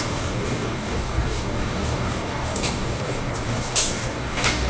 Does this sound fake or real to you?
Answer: fake